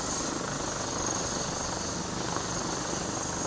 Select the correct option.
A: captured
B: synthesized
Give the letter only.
A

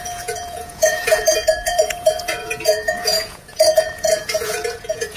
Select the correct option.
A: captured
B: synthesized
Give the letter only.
B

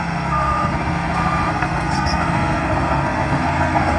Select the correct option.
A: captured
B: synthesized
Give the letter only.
B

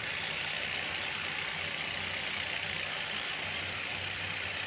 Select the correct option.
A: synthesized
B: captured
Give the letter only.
B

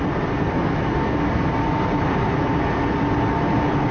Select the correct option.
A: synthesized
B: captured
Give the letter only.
B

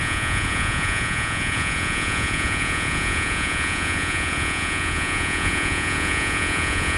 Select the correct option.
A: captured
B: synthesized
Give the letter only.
B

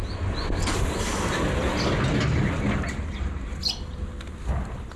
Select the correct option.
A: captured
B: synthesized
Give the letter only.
A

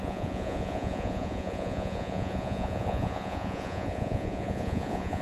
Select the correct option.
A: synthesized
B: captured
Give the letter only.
A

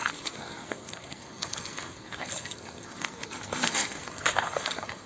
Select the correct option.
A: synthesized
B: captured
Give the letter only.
A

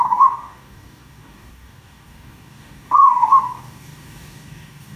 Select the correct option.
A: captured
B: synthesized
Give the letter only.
B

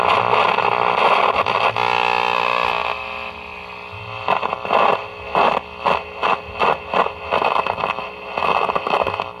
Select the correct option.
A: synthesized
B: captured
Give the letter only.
B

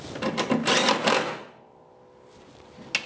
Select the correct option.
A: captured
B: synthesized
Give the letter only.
A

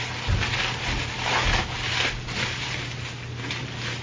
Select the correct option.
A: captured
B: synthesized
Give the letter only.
A